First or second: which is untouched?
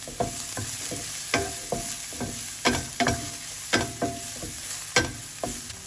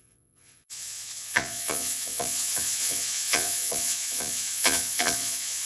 first